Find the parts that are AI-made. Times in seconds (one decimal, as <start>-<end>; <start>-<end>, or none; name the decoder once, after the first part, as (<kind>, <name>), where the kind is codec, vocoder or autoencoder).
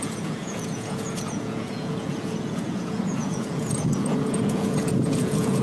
0.0-5.6 (vocoder, Vocos)